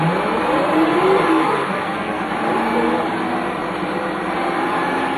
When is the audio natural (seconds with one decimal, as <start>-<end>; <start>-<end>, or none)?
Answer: 0.0-1.3; 2.3-5.2